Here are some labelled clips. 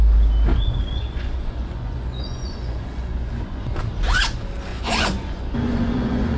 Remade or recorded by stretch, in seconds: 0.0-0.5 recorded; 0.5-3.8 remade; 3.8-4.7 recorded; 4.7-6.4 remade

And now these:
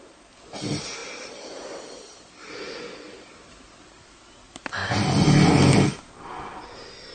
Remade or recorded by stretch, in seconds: 0.0-7.1 recorded